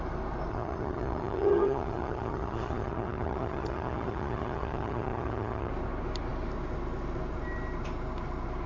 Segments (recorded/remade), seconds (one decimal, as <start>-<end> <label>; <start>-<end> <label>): 0.0-0.5 recorded; 0.5-5.7 remade; 5.7-8.7 recorded